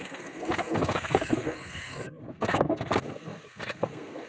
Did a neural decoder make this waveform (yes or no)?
yes